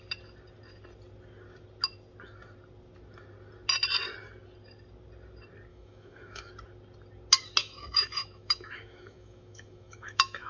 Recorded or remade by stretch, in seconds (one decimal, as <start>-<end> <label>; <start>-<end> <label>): 0.0-5.7 recorded; 5.7-6.5 remade; 6.5-7.6 recorded; 7.6-10.5 remade